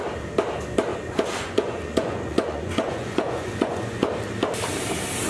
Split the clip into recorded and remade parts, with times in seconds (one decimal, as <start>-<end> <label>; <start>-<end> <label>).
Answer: 0.0-0.9 recorded; 0.9-4.1 remade; 4.1-5.3 recorded